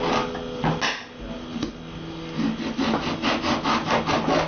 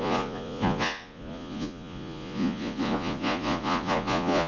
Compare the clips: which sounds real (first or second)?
first